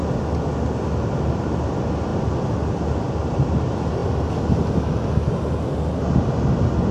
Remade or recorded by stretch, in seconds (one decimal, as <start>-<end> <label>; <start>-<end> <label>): 0.0-6.9 recorded